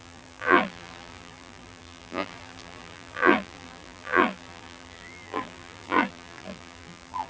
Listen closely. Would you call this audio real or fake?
fake